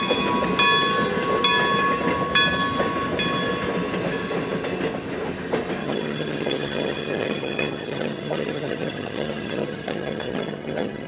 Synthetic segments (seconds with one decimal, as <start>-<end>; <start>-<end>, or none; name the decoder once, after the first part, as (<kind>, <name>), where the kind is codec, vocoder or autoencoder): 5.8-11.1 (vocoder, HiFi-GAN)